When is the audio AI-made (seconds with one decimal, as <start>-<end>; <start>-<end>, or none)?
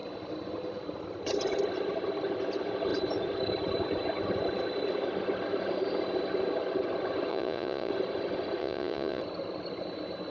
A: 7.3-7.9; 8.6-9.2